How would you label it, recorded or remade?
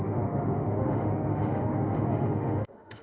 remade